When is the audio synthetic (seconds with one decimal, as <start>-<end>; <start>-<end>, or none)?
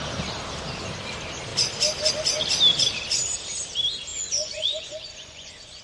4.1-5.8